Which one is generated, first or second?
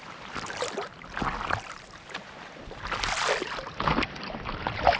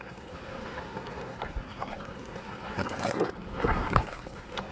second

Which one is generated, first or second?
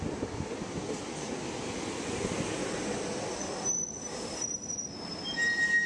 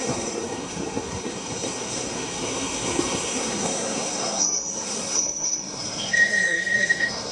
second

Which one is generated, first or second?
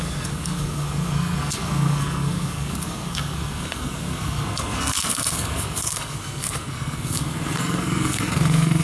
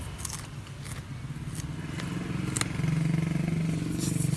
first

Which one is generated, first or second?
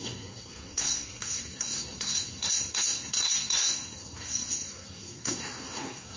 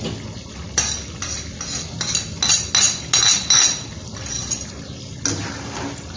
first